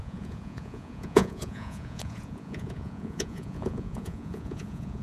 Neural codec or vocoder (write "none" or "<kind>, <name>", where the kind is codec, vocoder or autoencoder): vocoder, Vocos